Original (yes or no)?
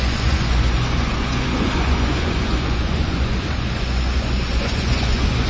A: no